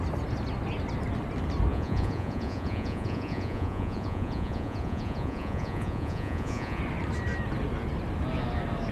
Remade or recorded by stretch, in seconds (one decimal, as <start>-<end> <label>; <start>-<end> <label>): 0.0-1.7 recorded; 1.7-6.8 remade; 6.8-8.9 recorded

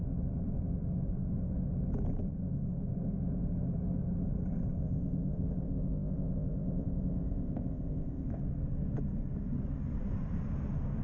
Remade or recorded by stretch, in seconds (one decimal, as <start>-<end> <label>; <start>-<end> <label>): 0.0-4.8 recorded; 4.8-8.4 remade; 8.4-11.0 recorded